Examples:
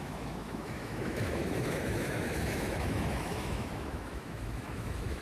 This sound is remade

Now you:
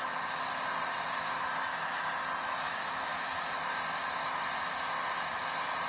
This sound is recorded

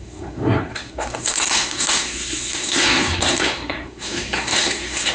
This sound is remade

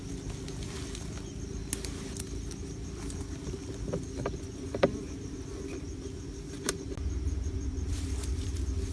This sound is recorded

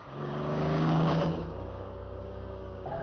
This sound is remade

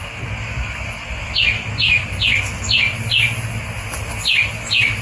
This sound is recorded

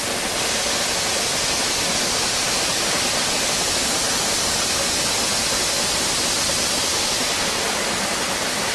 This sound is recorded